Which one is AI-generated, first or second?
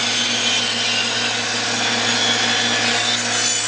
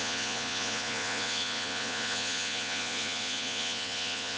second